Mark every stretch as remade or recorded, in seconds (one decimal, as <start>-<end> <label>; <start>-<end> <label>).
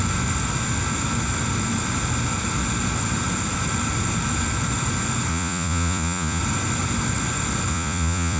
0.0-5.3 recorded; 5.3-6.4 remade; 6.4-7.7 recorded; 7.7-8.4 remade